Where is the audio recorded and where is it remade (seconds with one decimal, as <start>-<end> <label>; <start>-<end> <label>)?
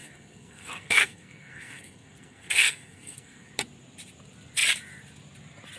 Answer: 0.0-3.5 remade; 3.5-5.8 recorded